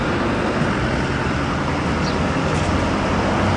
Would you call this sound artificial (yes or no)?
no